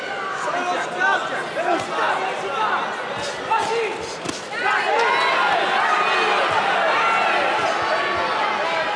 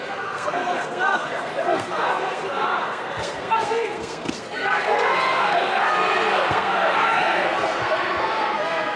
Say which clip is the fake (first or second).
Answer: second